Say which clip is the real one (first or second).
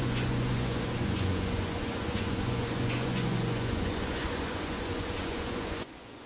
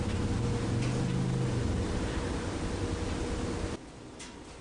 second